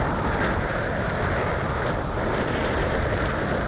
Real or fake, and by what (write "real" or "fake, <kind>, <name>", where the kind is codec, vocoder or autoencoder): real